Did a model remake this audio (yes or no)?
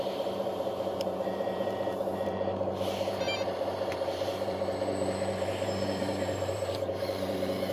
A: yes